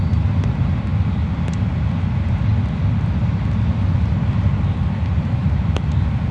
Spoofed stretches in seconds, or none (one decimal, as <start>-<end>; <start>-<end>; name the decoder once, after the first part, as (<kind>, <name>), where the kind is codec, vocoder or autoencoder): none